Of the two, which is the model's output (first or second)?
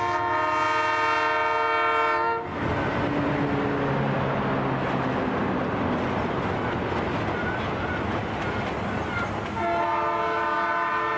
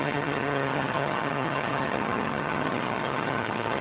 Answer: second